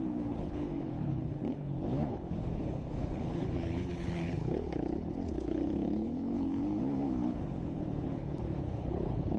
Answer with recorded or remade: remade